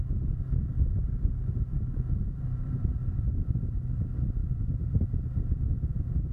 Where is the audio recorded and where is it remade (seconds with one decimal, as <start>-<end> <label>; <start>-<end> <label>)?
0.0-1.7 recorded; 1.7-3.3 remade; 3.3-4.4 recorded; 4.4-5.3 remade; 5.3-6.3 recorded